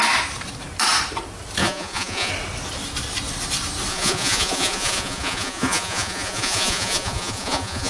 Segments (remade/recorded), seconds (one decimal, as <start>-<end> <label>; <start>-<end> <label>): 0.0-1.6 recorded; 1.6-2.3 remade; 2.3-3.9 recorded; 3.9-7.9 remade